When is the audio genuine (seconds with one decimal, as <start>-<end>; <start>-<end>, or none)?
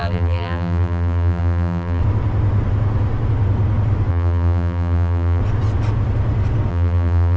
2.0-4.1; 5.4-6.7